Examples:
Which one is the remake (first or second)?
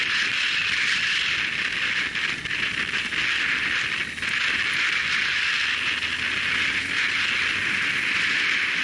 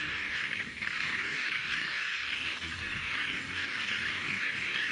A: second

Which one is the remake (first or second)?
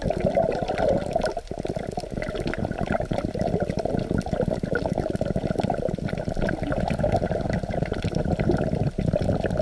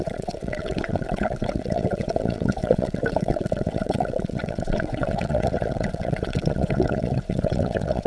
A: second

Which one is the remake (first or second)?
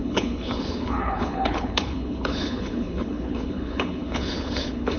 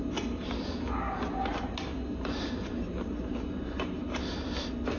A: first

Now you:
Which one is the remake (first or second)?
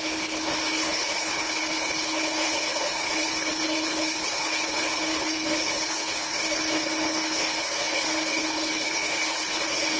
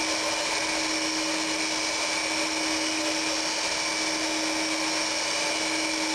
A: first